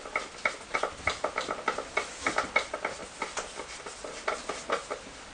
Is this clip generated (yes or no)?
no